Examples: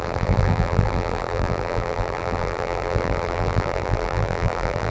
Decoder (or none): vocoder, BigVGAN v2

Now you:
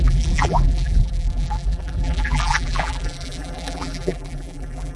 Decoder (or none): vocoder, BigVGAN v2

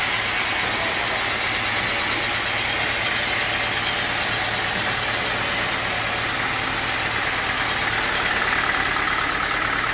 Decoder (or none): none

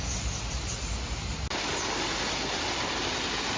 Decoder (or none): none